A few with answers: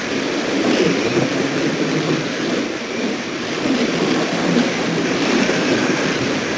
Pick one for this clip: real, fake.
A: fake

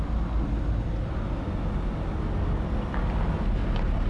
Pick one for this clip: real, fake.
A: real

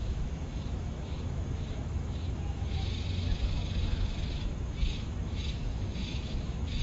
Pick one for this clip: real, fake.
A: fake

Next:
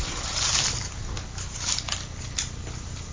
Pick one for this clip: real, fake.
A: real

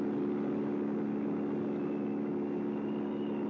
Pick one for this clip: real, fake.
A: real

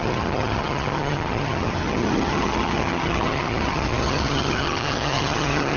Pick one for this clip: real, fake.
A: fake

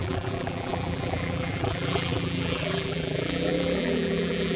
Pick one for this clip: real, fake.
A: fake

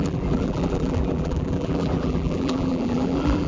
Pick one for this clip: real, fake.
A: fake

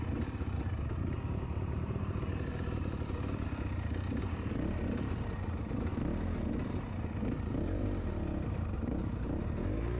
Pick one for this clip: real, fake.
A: real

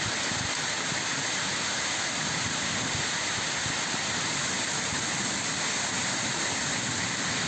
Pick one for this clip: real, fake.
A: real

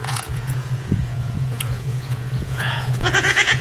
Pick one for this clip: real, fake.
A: fake